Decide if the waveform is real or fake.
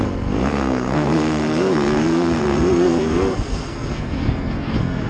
fake